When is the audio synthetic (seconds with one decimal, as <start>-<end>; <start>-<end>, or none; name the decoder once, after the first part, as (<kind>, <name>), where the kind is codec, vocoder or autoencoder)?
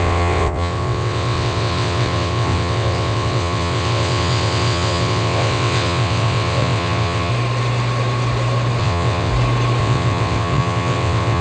0.0-7.3 (vocoder, WaveNeXt); 8.8-9.3; 9.8-11.4